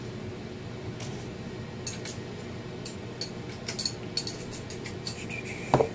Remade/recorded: recorded